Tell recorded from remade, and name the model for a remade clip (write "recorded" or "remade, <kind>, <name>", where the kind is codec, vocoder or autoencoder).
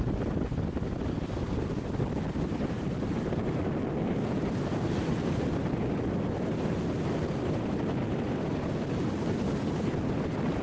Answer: recorded